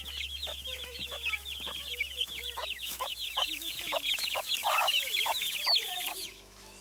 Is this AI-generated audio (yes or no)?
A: yes